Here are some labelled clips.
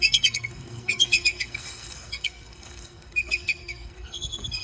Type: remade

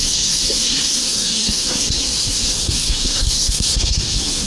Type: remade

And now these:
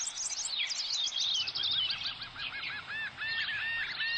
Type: recorded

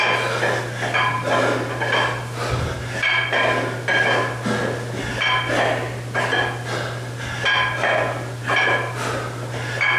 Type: recorded